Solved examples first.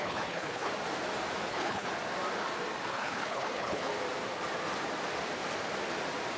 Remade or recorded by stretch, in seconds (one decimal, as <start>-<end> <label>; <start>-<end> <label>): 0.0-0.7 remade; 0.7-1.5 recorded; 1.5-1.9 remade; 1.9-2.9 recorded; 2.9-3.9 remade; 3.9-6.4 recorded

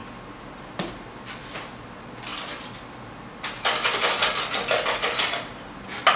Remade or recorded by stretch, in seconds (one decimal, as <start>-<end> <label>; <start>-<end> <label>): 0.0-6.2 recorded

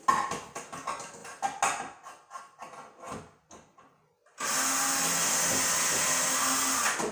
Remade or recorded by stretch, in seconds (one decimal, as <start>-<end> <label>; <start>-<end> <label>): 0.0-7.1 recorded

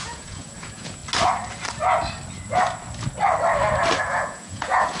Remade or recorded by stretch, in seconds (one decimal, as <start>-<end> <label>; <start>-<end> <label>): 0.0-1.0 remade; 1.0-4.0 recorded; 4.0-5.0 remade